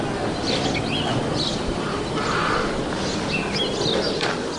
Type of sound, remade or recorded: recorded